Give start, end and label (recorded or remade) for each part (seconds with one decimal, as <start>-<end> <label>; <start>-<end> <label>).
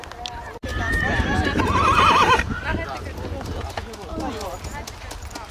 0.0-0.7 recorded; 0.7-2.0 remade; 2.0-5.5 recorded